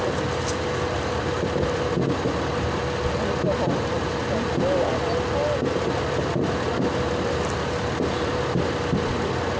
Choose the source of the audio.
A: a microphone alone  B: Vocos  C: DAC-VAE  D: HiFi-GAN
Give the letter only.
A